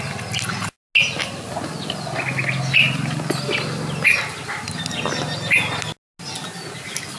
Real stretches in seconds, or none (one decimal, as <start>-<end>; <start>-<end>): 0.0-7.2